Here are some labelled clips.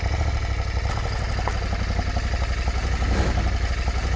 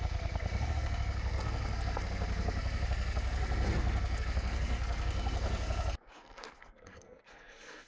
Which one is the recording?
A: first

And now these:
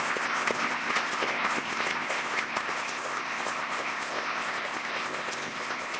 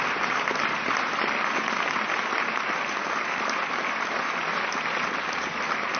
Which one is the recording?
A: second